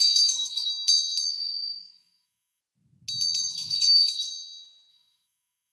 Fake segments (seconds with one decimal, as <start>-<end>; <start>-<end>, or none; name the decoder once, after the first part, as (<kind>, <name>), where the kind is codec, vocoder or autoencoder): 0.0-0.7 (codec, DAC); 1.3-2.6; 3.5-4.3; 4.9-5.7